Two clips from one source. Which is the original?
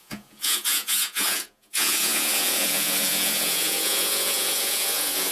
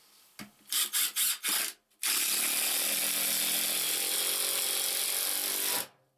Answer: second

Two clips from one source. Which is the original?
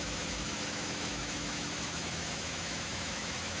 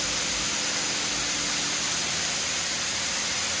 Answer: second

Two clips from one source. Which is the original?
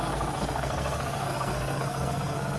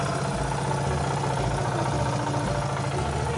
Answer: second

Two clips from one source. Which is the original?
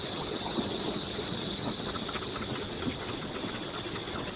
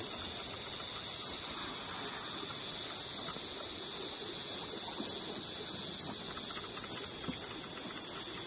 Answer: second